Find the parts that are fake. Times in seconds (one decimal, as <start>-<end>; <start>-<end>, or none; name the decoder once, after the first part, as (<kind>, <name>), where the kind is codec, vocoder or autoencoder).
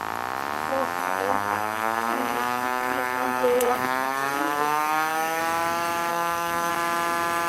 1.0-5.4 (codec, SNAC); 6.1-6.7